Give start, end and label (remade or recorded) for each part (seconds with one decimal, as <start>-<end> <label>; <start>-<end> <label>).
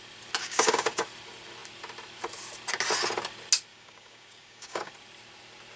0.0-0.4 recorded; 0.4-1.0 remade; 1.0-3.7 recorded; 3.7-4.9 remade; 4.9-5.8 recorded